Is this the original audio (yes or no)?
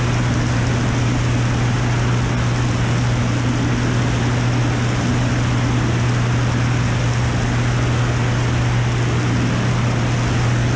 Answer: yes